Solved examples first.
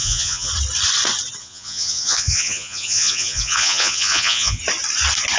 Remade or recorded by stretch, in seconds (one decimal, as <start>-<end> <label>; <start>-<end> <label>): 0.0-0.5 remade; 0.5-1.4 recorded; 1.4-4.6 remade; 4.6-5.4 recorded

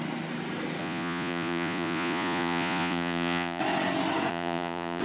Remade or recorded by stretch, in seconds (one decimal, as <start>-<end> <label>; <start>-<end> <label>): 0.0-0.8 recorded; 0.8-3.6 remade; 3.6-4.3 recorded; 4.3-5.0 remade

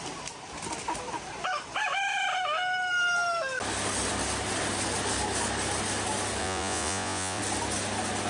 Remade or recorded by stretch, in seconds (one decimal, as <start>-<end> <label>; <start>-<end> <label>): 0.0-6.4 recorded; 6.4-7.4 remade; 7.4-8.3 recorded

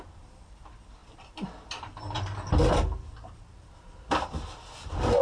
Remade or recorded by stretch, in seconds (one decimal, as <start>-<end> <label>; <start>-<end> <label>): 0.0-5.2 recorded